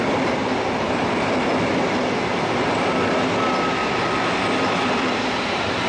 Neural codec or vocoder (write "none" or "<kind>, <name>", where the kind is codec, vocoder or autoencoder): none